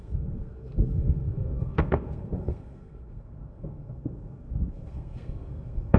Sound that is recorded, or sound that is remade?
remade